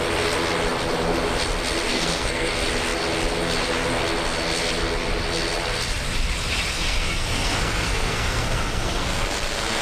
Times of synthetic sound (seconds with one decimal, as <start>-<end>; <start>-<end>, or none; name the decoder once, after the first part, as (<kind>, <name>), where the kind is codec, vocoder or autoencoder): 1.9-2.5 (codec, SNAC); 6.7-9.8